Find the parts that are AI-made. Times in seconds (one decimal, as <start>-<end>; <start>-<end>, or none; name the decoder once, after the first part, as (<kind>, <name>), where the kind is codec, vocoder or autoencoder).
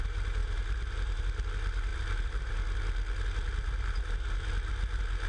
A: 0.0-5.3 (vocoder, BigVGAN v2)